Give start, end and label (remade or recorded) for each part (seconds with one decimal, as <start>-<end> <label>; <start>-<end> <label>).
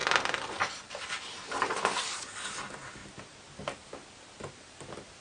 0.0-5.2 recorded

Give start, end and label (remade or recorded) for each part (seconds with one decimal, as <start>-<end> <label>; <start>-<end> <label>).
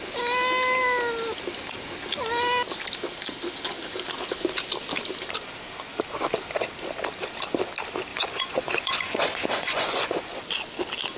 0.0-8.1 recorded; 8.1-10.4 remade; 10.4-11.2 recorded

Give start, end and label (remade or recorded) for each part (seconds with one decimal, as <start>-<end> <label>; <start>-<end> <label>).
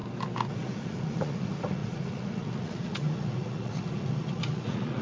0.0-0.5 recorded; 0.5-5.0 remade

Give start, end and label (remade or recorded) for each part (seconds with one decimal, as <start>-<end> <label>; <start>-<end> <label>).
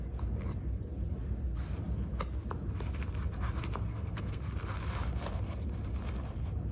0.0-3.9 recorded; 3.9-4.5 remade; 4.5-6.7 recorded